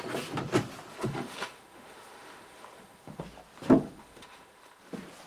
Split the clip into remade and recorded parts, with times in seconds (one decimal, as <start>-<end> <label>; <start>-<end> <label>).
0.0-0.9 recorded; 0.9-3.2 remade; 3.2-3.8 recorded; 3.8-4.8 remade; 4.8-5.3 recorded